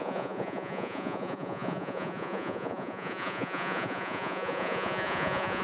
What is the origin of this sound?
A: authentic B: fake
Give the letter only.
B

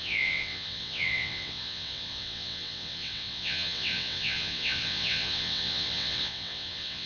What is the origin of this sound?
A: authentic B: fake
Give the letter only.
B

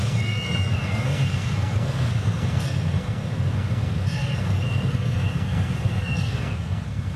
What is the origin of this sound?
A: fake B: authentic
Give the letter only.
A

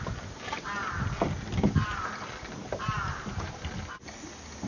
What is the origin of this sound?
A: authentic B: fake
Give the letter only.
A